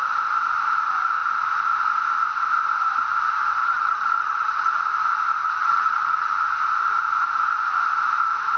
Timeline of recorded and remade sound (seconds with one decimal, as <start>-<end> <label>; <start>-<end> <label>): 0.0-3.6 recorded; 3.6-4.7 remade; 4.7-5.4 recorded; 5.4-6.3 remade; 6.3-8.6 recorded